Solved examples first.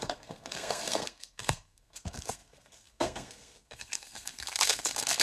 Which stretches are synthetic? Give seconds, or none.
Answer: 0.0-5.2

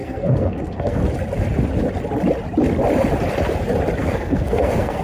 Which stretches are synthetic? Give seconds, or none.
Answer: 0.0-1.0; 4.0-5.0